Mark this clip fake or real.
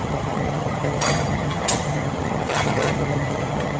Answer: fake